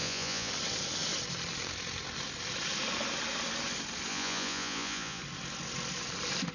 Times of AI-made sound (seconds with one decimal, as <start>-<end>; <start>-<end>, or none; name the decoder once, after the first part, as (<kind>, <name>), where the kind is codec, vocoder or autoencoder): 0.0-0.5 (vocoder, Vocos); 4.1-5.2